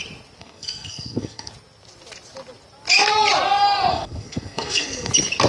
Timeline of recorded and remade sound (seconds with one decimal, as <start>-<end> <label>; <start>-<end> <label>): 0.0-0.4 recorded; 0.4-1.5 remade; 1.5-3.9 recorded; 3.9-5.1 remade; 5.1-5.5 recorded